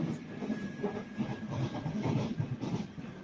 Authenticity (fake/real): real